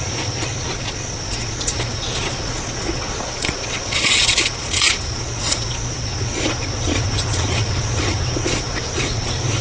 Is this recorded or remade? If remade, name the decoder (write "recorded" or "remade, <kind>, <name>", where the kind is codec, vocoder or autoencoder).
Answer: remade, vocoder, Vocos